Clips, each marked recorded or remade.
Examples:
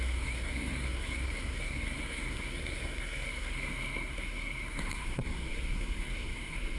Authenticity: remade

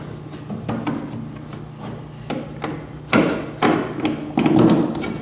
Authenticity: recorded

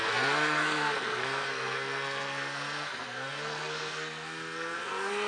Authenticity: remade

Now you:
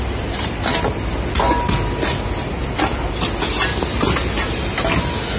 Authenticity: recorded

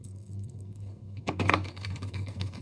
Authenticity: remade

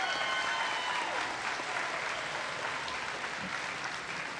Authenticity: recorded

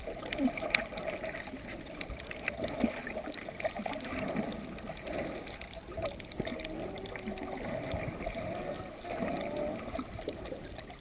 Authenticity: recorded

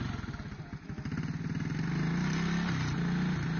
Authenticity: recorded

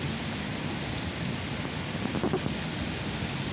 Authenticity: recorded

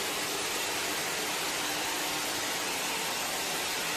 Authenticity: recorded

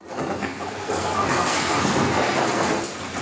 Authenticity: remade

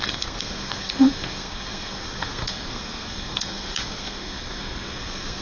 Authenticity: remade